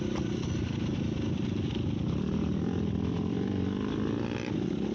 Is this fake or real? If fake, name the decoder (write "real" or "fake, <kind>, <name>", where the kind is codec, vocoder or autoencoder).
real